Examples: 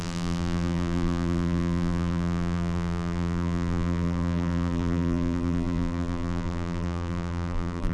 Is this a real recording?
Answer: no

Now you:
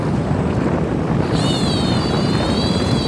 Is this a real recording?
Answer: no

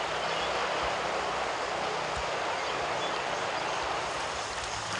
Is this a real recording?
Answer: yes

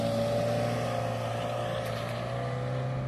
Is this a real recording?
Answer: yes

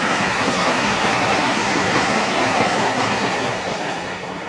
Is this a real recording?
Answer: no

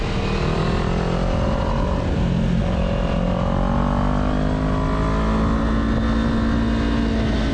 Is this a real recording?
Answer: yes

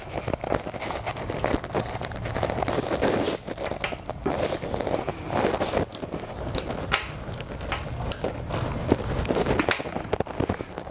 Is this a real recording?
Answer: yes